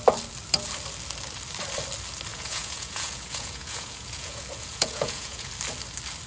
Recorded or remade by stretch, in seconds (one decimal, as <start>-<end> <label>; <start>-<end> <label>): 0.0-2.3 recorded; 2.3-5.5 remade; 5.5-6.3 recorded